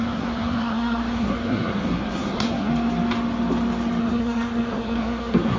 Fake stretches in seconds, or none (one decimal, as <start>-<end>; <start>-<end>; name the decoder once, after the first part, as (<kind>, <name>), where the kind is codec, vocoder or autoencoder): 0.0-2.7 (codec, SNAC); 4.0-5.6